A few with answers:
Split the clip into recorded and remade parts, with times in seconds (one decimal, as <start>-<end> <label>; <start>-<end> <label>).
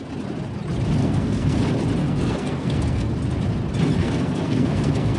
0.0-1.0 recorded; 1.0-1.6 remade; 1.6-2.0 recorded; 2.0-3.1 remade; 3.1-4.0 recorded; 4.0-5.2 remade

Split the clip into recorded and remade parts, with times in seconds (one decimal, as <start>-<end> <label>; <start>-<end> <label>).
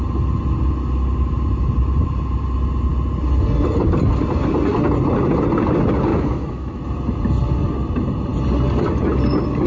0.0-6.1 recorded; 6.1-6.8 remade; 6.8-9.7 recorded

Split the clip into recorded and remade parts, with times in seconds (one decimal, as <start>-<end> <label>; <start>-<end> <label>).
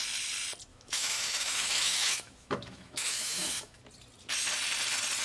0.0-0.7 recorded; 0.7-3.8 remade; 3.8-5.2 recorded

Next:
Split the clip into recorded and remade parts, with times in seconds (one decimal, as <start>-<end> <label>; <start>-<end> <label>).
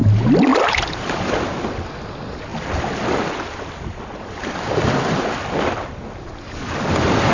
0.0-7.3 recorded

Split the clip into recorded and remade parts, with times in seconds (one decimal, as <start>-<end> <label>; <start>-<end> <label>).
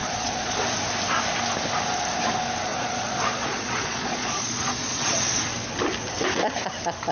0.0-0.6 remade; 0.6-2.7 recorded; 2.7-5.4 remade; 5.4-7.1 recorded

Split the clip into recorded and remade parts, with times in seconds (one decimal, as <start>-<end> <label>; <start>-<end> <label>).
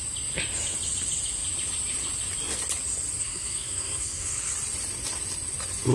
0.0-3.2 recorded; 3.2-4.5 remade; 4.5-5.9 recorded